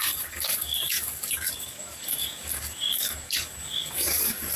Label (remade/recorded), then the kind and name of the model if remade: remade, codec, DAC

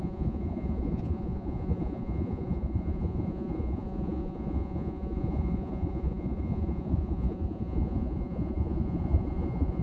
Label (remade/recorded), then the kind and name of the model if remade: remade, vocoder, Vocos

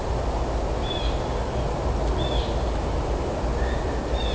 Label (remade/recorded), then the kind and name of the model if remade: recorded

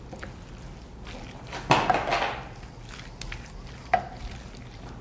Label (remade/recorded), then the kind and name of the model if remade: recorded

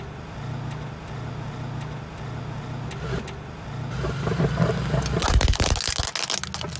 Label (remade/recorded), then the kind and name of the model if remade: recorded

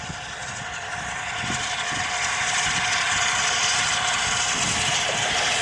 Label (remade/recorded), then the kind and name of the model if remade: recorded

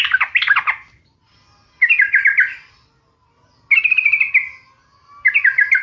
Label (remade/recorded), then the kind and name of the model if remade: recorded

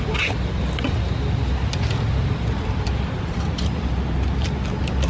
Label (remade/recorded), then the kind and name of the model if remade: recorded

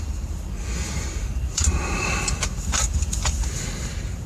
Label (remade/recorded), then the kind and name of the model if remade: remade, vocoder, BigVGAN v2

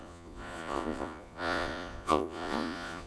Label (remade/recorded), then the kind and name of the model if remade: remade, vocoder, Vocos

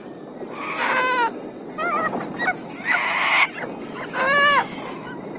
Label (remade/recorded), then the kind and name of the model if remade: recorded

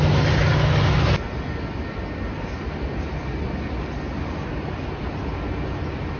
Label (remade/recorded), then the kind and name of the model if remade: recorded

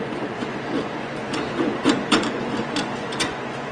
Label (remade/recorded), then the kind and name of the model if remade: remade, vocoder, Vocos